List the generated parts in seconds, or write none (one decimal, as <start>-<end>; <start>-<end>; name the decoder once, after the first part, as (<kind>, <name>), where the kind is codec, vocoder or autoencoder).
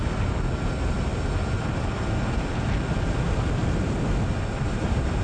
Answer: none